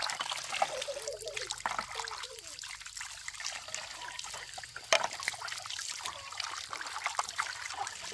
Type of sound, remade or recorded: recorded